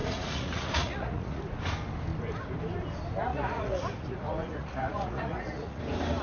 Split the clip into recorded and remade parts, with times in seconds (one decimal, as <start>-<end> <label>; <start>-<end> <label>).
0.0-1.4 remade; 1.4-3.3 recorded; 3.3-5.8 remade; 5.8-6.2 recorded